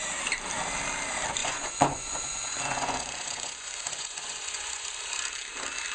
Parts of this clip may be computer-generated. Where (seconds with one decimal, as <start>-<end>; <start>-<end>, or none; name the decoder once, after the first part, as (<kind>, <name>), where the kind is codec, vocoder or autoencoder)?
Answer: 1.4-4.9 (vocoder, Vocos)